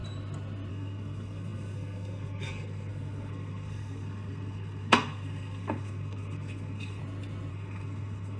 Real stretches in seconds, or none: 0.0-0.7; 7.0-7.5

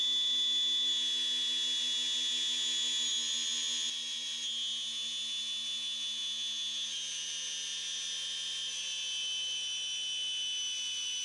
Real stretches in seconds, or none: 0.0-11.2

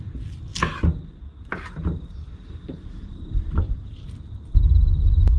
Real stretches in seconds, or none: 0.0-1.5; 4.7-5.4

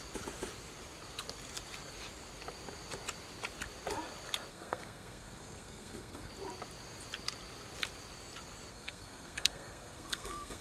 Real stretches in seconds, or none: 0.0-4.5; 6.3-8.7

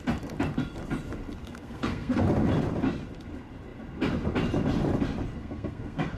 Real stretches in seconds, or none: 0.0-1.4; 2.2-5.4

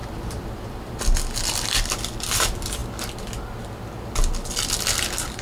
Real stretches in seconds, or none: 1.0-5.4

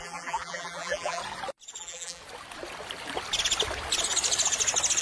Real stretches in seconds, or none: 1.2-1.8; 2.2-5.0

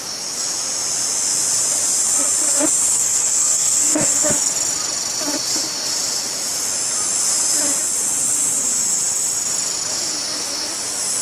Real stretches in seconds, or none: 0.0-2.8; 4.3-11.2